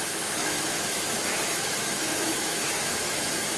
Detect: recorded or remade remade